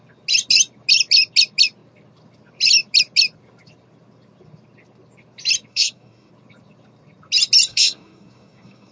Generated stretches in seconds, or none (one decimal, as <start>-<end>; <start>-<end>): 5.7-6.3; 7.7-8.9